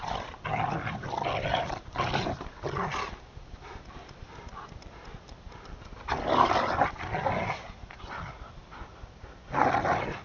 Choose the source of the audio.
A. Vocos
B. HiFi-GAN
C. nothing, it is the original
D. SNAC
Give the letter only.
C